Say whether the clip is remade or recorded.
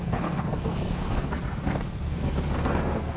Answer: remade